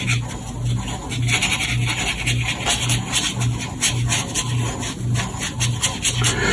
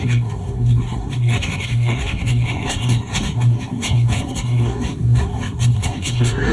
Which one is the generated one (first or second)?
second